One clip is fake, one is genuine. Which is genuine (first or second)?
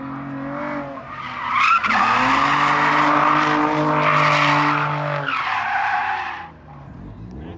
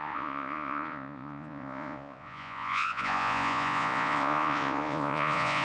first